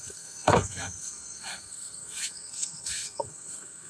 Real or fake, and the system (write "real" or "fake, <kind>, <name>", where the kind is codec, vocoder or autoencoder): fake, codec, SNAC